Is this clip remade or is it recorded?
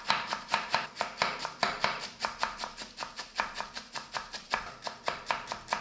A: remade